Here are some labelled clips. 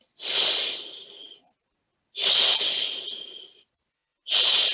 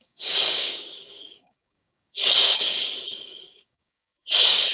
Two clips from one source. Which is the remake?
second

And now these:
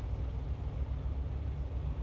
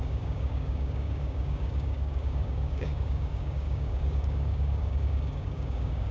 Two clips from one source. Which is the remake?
second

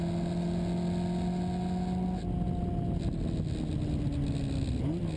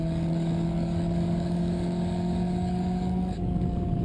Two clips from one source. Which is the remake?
second